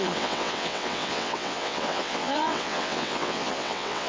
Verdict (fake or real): fake